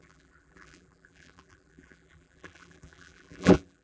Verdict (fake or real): fake